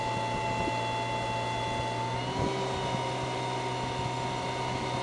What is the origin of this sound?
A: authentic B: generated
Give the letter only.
A